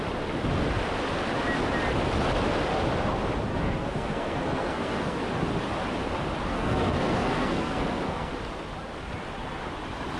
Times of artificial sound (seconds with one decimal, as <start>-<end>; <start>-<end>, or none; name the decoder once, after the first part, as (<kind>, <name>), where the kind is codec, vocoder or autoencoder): 3.5-5.2 (codec, SNAC); 6.5-8.3